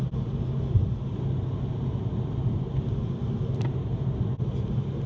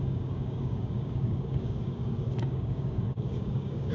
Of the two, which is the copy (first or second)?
second